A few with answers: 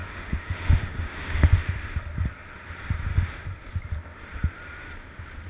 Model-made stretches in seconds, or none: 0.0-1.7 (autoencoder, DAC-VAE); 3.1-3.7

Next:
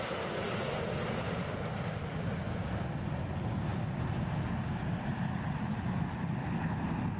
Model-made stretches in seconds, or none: none